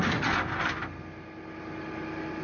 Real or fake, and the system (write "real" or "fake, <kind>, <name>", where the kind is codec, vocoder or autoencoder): real